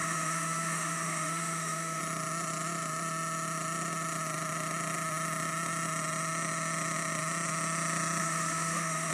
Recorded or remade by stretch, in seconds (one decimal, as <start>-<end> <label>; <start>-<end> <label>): 0.0-2.0 remade; 2.0-8.2 recorded; 8.2-9.1 remade